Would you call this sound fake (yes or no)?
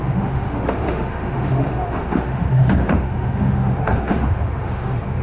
yes